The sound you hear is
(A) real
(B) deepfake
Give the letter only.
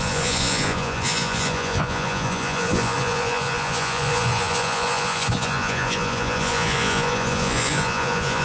B